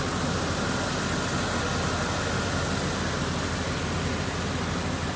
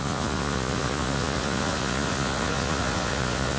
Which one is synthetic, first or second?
second